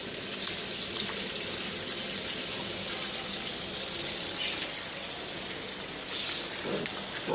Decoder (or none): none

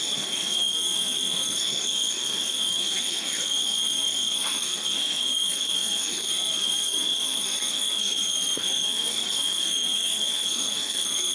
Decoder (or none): codec, SNAC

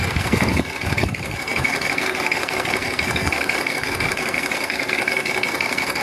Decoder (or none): codec, SNAC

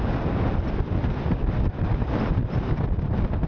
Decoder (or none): none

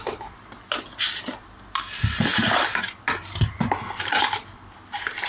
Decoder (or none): none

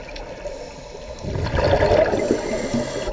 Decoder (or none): none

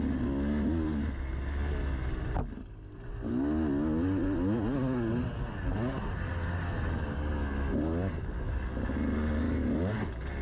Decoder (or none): none